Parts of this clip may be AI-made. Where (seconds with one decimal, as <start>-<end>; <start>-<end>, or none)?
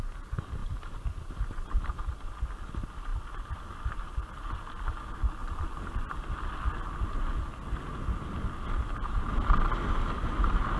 0.6-2.0; 5.4-6.2